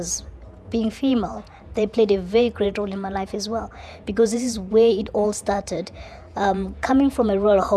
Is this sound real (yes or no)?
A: no